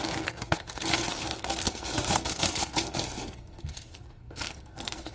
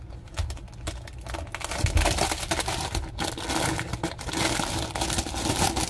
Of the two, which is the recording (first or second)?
second